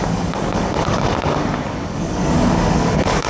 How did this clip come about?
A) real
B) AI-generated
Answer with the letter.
B